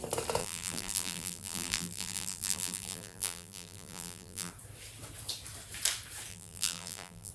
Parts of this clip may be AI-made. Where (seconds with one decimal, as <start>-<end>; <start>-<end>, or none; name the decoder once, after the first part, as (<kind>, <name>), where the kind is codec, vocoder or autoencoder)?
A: 0.4-4.5 (vocoder, BigVGAN v2); 6.3-7.3